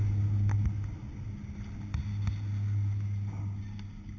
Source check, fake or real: real